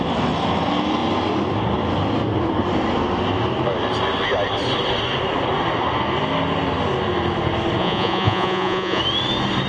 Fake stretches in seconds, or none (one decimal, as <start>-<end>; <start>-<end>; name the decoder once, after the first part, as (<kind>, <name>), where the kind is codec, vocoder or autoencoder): 7.8-9.0 (vocoder, Vocos)